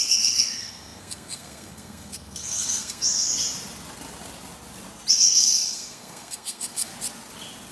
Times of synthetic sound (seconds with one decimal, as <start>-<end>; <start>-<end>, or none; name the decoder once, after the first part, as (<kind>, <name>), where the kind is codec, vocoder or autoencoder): 0.0-3.3 (codec, SNAC); 5.1-6.9